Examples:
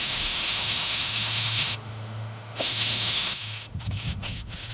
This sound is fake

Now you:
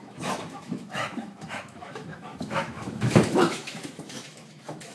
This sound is fake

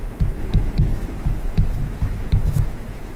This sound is fake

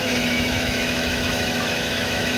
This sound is fake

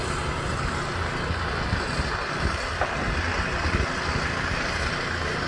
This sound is real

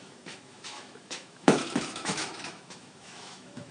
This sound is fake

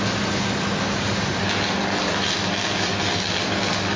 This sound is real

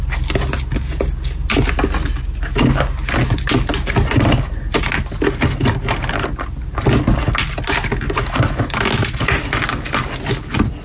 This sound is real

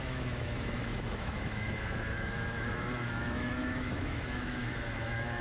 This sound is fake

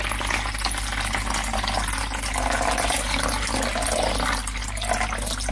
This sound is real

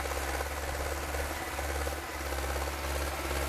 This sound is real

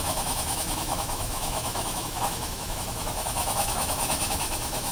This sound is fake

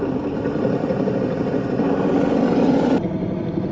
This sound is real